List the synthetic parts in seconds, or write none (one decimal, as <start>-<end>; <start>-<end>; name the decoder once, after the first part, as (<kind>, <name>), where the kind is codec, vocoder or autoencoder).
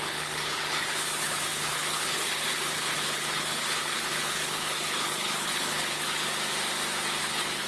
0.0-6.3 (codec, HILCodec); 7.2-7.7